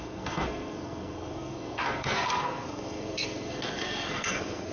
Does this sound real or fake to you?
fake